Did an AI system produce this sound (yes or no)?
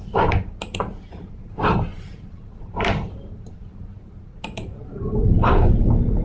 yes